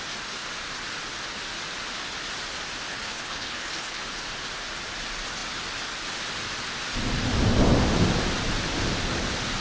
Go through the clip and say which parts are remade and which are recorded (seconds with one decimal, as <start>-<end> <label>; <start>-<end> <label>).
0.0-2.9 recorded; 2.9-4.0 remade; 4.0-9.6 recorded